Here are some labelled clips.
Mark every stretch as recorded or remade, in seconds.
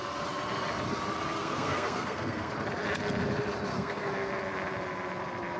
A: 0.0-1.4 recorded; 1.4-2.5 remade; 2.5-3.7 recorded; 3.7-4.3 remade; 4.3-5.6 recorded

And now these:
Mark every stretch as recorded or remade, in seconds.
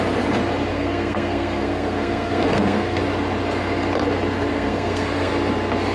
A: 0.0-0.7 recorded; 0.7-3.0 remade; 3.0-4.5 recorded; 4.5-5.3 remade; 5.3-5.9 recorded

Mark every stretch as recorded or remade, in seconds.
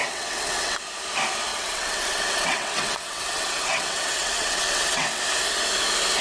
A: 0.0-0.8 remade; 0.8-1.5 recorded; 1.5-5.2 remade; 5.2-6.2 recorded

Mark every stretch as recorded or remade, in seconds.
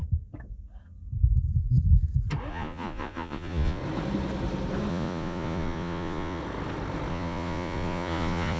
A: 0.0-2.5 recorded; 2.5-3.8 remade; 3.8-4.9 recorded; 4.9-6.4 remade; 6.4-7.1 recorded; 7.1-8.6 remade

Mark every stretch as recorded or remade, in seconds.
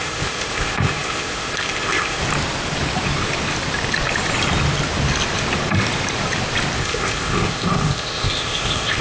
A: 0.0-2.2 remade; 2.2-6.8 recorded; 6.8-9.0 remade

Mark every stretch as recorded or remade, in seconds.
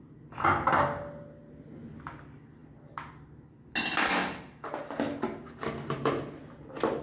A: 0.0-7.0 recorded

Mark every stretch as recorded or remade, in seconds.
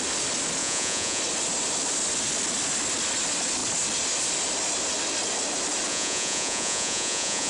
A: 0.0-0.6 recorded; 0.6-1.2 remade; 1.2-5.9 recorded; 5.9-7.5 remade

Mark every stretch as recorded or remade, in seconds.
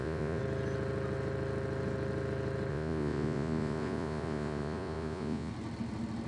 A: 0.0-0.4 remade; 0.4-2.7 recorded; 2.7-5.5 remade; 5.5-6.3 recorded